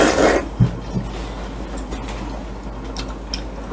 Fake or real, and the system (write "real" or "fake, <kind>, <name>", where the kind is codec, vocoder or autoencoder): real